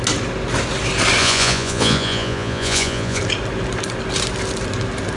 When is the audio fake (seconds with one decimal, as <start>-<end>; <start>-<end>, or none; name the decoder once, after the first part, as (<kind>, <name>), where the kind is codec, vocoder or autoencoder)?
1.2-3.2 (vocoder, Vocos)